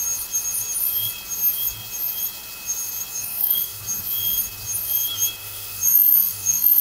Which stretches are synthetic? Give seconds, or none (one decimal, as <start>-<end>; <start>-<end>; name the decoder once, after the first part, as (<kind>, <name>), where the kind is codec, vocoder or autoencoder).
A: 3.1-3.8 (autoencoder, DAC-VAE); 5.4-6.8